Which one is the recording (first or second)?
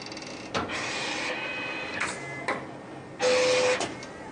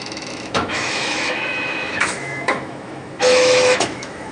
first